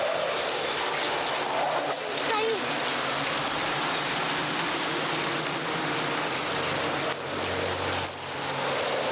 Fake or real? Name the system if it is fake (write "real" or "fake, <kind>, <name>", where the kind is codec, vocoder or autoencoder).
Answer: real